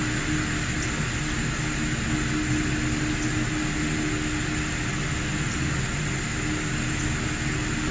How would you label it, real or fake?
real